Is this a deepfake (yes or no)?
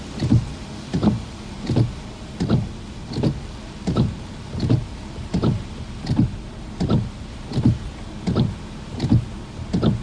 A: no